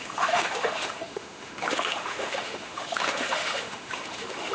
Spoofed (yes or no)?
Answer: yes